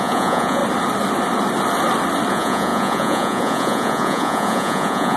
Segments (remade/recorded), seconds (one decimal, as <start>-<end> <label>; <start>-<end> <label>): 0.0-0.6 remade; 0.6-2.3 recorded; 2.3-5.2 remade